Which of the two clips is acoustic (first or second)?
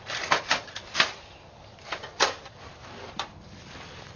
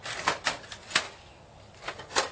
second